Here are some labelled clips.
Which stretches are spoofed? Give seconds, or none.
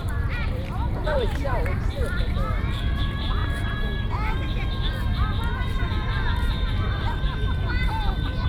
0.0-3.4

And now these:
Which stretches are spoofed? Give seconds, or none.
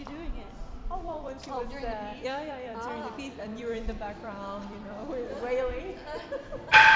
0.0-5.0; 5.8-7.0